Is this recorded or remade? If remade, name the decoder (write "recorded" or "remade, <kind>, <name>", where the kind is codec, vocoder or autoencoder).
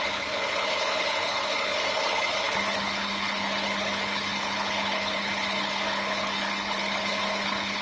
remade, codec, HILCodec